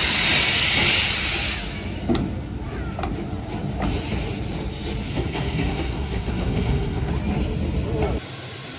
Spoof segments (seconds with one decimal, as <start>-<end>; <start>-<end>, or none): 5.1-7.1